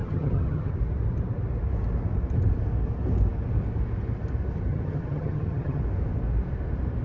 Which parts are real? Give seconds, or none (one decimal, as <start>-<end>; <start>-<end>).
0.7-4.7; 5.8-7.0